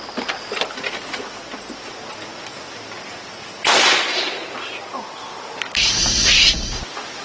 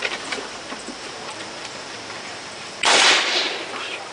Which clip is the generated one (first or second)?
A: second